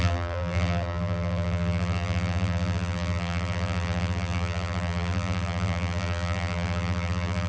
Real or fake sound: fake